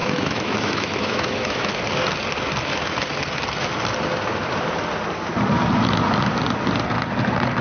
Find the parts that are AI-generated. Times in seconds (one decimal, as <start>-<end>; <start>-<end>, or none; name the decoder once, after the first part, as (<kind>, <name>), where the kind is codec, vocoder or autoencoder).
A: 0.0-1.7 (autoencoder, DAC-VAE)